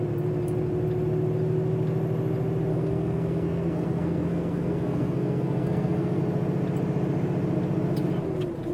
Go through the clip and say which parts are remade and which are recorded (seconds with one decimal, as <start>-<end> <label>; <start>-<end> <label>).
0.0-2.7 recorded; 2.7-6.2 remade; 6.2-8.7 recorded